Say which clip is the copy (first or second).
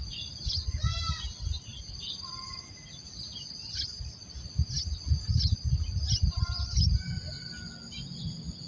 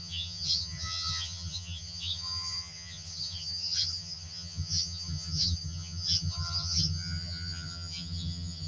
second